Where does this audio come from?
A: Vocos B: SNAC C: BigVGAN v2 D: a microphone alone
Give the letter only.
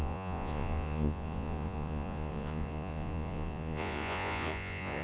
A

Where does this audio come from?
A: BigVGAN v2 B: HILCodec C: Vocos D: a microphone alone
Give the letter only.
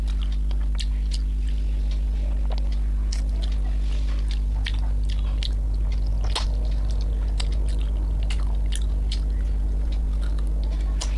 D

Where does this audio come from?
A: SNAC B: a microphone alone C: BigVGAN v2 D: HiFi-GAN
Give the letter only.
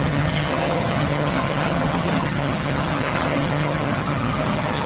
D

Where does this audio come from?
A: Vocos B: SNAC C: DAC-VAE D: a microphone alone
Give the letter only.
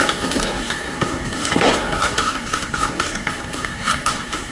B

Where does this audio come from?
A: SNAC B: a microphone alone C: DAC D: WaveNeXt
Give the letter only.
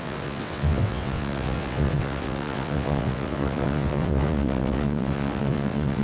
D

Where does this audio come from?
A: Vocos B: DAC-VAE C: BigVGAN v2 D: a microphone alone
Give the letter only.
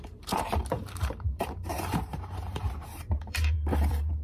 C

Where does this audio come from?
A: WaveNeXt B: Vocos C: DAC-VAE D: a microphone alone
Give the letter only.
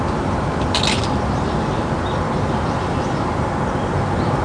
D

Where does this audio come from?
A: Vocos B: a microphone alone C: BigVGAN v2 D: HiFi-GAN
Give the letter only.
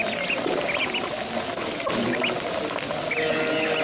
B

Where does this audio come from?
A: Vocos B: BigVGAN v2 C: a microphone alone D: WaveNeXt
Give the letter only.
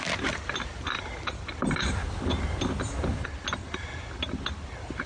C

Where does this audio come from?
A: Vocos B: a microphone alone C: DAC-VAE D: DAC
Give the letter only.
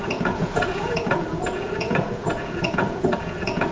A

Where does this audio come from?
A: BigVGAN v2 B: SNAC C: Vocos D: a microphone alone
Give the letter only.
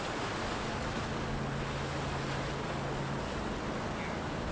D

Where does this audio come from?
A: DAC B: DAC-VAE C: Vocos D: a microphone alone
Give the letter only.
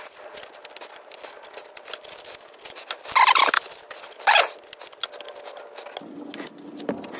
D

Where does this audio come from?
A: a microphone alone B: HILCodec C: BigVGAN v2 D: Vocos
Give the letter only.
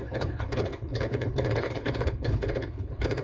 B